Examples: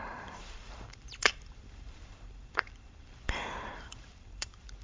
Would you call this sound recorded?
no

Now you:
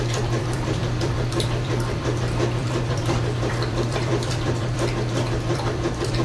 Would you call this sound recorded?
no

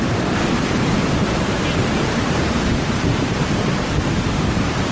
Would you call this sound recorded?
no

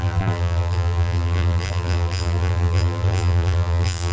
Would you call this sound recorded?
no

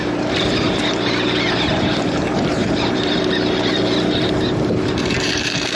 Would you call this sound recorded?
no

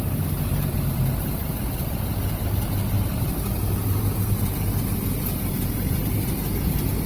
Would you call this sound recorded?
yes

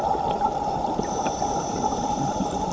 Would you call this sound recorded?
no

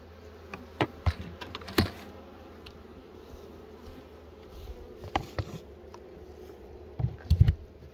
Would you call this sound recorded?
yes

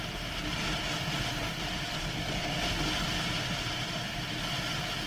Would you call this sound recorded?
yes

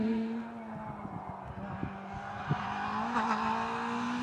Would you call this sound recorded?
yes